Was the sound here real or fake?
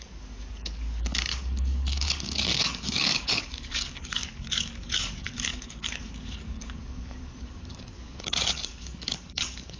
fake